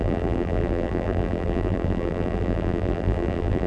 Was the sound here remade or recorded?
remade